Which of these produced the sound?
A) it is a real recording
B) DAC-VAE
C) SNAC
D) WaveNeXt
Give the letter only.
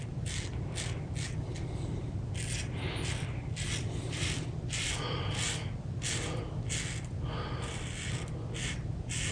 A